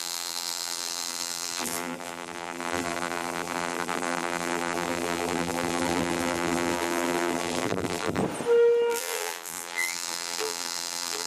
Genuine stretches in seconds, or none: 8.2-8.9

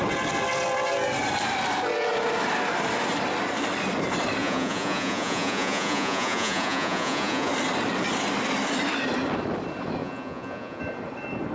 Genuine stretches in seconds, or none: 0.0-4.4; 7.5-10.0; 10.8-11.5

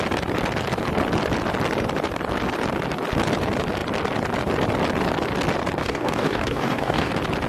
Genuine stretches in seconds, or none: 0.0-5.8; 7.1-7.5

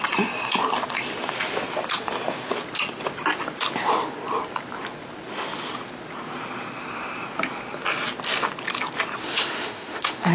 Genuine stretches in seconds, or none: 0.0-9.2